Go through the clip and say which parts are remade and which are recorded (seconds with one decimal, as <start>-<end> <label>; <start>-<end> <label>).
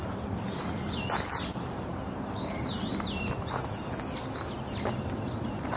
0.0-5.8 recorded